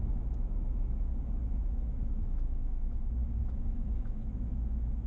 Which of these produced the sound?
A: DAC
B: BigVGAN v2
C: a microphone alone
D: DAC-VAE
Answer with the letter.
D